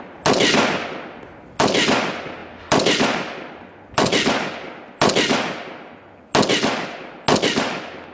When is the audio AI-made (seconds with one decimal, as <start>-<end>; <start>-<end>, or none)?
none